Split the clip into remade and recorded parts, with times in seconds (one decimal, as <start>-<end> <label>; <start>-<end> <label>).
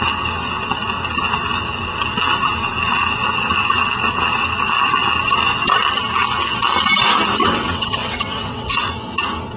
0.0-7.4 recorded; 7.4-8.9 remade; 8.9-9.6 recorded